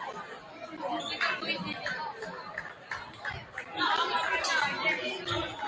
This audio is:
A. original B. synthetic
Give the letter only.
A